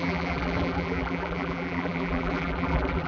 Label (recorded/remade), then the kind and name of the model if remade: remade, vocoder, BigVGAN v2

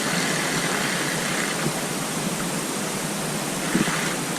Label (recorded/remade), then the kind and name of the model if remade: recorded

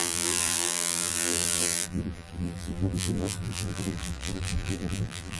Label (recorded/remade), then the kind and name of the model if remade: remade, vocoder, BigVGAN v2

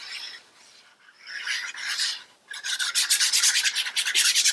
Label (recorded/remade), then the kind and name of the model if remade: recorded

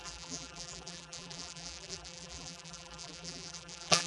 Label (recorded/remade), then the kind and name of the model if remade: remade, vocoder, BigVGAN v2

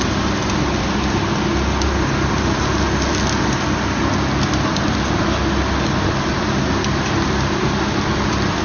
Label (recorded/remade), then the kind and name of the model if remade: recorded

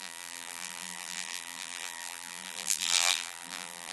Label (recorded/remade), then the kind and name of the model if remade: remade, vocoder, BigVGAN v2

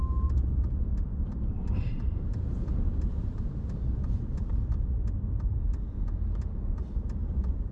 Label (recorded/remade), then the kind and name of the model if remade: remade, vocoder, BigVGAN v2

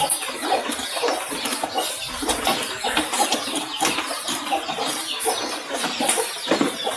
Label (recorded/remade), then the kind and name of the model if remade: remade, vocoder, BigVGAN v2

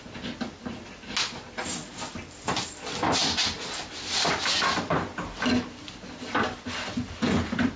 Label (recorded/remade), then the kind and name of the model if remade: recorded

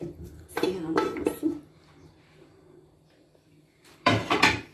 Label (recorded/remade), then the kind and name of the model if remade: remade, vocoder, BigVGAN v2